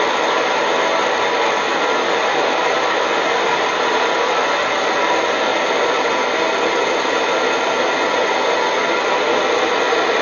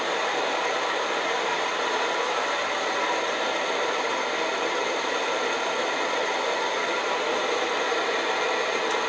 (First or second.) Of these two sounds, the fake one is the second